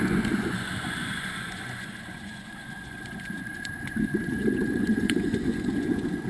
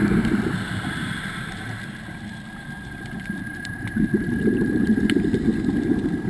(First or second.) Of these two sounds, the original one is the second